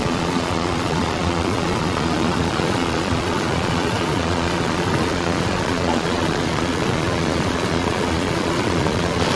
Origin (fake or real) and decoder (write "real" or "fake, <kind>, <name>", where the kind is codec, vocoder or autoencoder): fake, vocoder, Vocos